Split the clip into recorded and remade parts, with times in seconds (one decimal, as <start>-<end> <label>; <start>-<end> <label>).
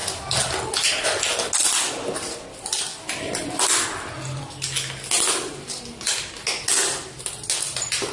0.0-8.1 recorded